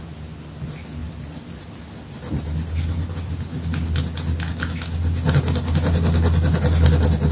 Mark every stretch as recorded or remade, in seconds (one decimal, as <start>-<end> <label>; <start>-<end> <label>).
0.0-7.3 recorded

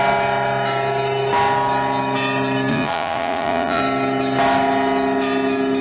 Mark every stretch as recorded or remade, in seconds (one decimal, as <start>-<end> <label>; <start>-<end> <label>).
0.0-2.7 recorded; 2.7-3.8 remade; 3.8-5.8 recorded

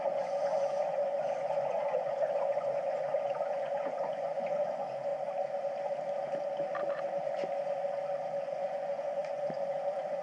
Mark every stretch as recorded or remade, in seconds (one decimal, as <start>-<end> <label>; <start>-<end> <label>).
0.0-5.1 remade; 5.1-8.2 recorded; 8.2-10.2 remade

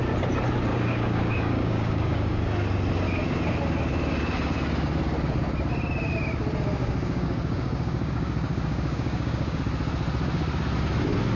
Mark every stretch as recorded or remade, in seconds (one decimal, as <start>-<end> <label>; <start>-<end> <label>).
0.0-0.7 recorded; 0.7-2.4 remade; 2.4-6.8 recorded; 6.8-9.6 remade; 9.6-11.4 recorded

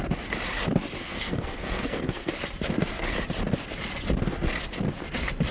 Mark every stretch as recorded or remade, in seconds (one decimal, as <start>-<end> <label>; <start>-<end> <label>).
0.0-1.0 recorded; 1.0-2.3 remade; 2.3-5.5 recorded